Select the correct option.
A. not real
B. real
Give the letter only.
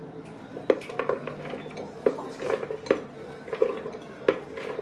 B